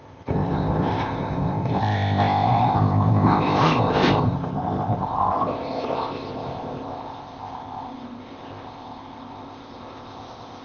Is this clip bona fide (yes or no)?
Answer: no